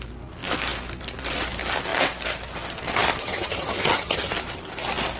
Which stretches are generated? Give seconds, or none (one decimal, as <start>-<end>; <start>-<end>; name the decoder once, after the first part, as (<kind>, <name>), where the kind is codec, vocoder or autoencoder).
3.2-4.3 (vocoder, HiFi-GAN)